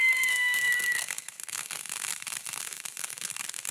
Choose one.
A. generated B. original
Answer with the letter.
A